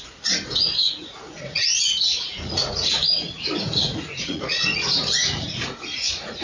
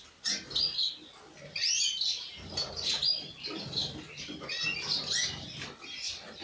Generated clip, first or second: first